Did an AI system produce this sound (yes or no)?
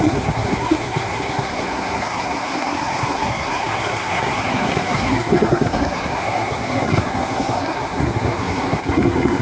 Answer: yes